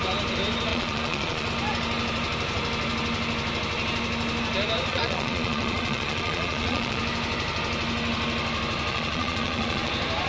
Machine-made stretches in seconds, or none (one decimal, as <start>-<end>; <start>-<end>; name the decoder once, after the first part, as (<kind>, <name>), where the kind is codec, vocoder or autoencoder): 0.7-1.5 (vocoder, Vocos); 4.9-7.0; 8.9-9.9